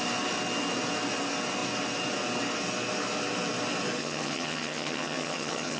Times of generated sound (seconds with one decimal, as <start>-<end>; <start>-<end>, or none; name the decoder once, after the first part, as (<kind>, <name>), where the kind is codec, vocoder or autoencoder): 4.0-5.8 (vocoder, HiFi-GAN)